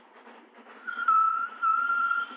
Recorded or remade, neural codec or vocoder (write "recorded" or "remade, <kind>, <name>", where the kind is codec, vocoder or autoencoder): remade, vocoder, Vocos